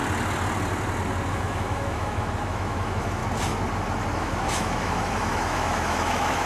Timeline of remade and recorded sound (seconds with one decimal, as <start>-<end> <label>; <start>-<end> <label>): 0.0-1.3 recorded; 1.3-3.2 remade; 3.2-4.2 recorded; 4.2-6.5 remade